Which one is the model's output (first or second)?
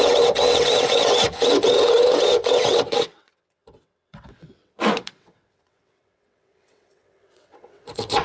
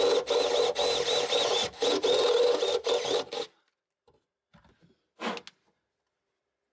first